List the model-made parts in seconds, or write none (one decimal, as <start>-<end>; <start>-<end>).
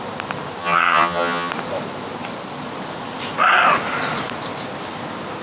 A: 0.6-1.5